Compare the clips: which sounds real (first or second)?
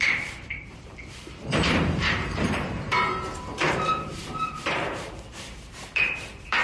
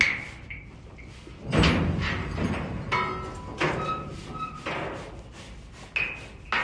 second